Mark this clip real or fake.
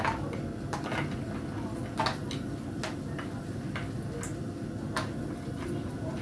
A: real